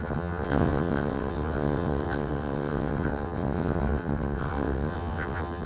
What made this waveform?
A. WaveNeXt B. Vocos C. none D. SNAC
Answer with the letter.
A